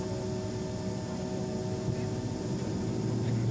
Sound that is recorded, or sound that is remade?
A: recorded